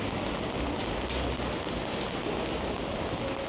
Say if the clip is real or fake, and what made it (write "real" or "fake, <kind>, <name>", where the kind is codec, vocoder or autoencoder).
real